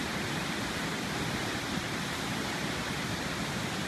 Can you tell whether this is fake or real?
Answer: fake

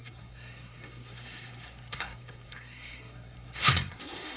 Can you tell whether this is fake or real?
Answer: fake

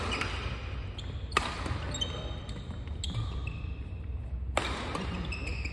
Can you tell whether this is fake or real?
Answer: real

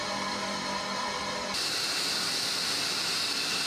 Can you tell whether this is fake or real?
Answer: real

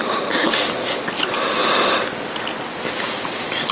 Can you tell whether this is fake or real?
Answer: real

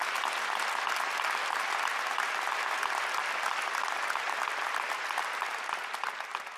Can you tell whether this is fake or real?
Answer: real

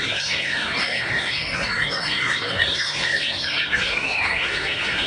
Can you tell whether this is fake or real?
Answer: fake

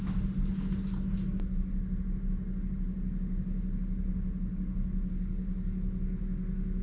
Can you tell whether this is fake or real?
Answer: real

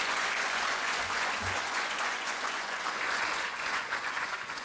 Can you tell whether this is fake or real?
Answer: fake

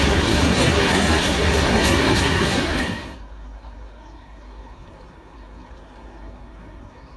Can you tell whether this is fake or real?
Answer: fake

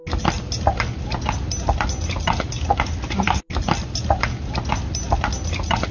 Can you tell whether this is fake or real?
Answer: real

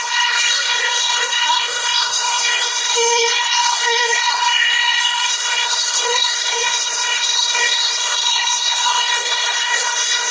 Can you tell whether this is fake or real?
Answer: fake